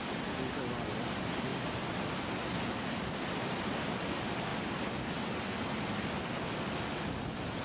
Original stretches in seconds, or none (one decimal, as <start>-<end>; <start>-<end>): 0.0-7.6